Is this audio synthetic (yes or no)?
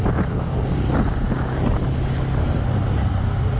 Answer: no